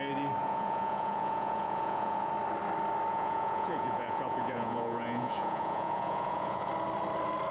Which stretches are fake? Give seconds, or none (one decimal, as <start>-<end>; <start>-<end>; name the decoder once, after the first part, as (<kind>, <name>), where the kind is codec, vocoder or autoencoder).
0.4-2.3 (vocoder, Vocos); 3.1-6.7